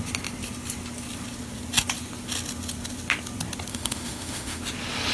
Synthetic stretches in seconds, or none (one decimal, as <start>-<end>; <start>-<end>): 3.7-4.6